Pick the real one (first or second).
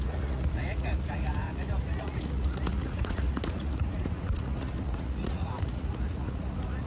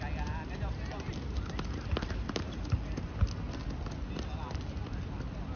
second